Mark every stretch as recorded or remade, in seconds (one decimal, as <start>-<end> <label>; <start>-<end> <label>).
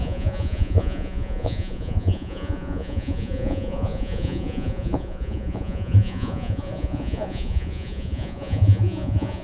0.0-9.4 remade